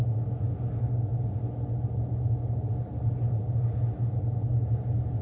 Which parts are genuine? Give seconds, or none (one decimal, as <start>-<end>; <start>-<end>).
0.0-5.2